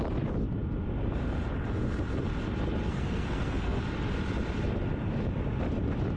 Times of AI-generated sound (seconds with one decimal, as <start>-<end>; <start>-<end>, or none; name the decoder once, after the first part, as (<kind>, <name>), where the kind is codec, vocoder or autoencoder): 2.9-3.8 (codec, SNAC)